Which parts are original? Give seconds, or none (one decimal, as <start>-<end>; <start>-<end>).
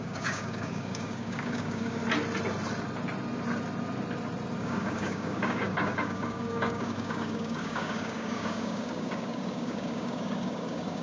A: 2.0-4.6